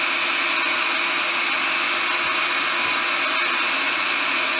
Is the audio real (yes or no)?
yes